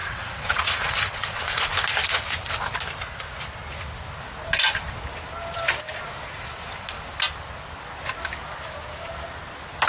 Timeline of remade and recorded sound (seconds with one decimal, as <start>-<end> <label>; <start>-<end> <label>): 0.0-1.7 remade; 1.7-9.9 recorded